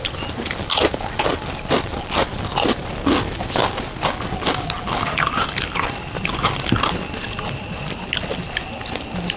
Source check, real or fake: real